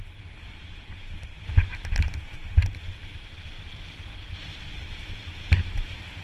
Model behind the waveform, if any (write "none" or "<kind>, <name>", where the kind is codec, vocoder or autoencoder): vocoder, BigVGAN v2